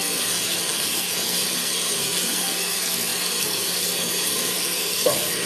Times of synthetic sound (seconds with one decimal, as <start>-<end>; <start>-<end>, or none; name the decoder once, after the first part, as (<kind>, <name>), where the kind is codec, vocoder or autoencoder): 0.0-5.5 (codec, SNAC)